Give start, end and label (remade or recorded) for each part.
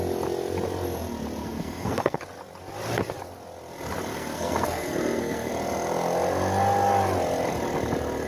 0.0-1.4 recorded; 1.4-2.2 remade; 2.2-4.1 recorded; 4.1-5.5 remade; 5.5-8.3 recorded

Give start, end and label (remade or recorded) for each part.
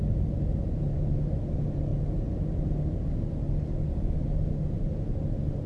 0.0-5.7 recorded